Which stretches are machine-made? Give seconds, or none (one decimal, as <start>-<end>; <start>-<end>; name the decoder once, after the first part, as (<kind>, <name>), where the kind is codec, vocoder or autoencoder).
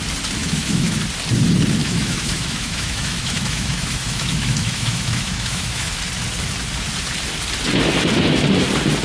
0.4-1.0 (autoencoder, DAC-VAE); 1.8-5.9